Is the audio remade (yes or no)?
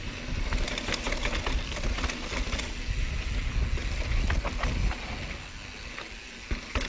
no